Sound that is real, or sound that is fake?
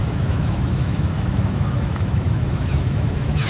fake